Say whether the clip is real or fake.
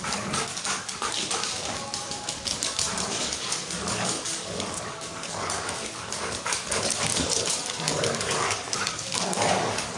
fake